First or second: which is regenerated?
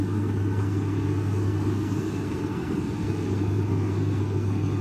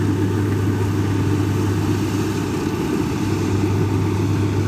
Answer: first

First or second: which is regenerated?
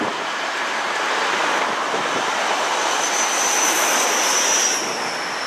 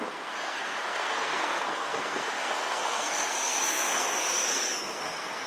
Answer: second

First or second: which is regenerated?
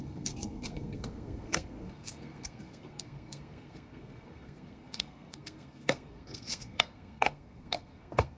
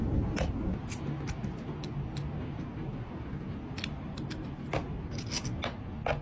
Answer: first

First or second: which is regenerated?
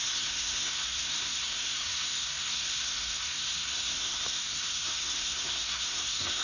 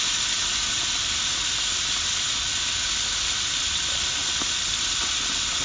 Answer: first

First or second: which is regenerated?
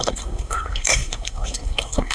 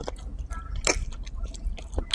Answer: first